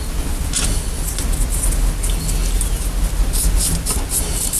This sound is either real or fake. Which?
real